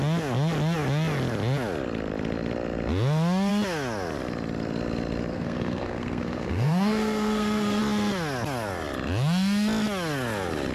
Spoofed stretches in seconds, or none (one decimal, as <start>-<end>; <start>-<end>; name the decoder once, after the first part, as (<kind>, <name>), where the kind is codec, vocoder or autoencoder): 5.3-7.8 (codec, SNAC)